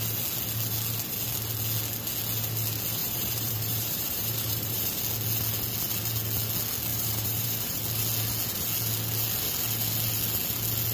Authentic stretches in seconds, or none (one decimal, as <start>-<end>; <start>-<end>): 0.0-3.0; 5.0-6.9; 7.8-10.9